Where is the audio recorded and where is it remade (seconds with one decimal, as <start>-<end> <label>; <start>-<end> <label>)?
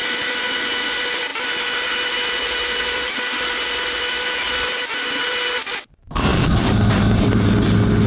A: 0.0-8.1 recorded